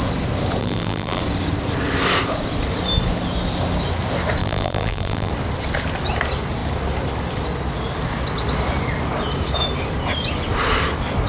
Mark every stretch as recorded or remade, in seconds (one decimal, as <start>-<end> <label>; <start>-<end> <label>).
0.0-0.6 recorded; 0.6-1.2 remade; 1.2-4.4 recorded; 4.4-5.3 remade; 5.3-11.3 recorded